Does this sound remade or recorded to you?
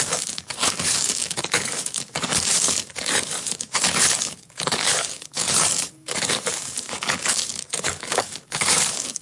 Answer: remade